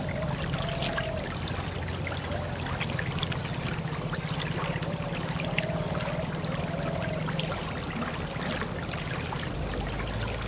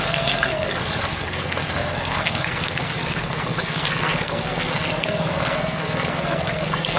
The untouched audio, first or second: first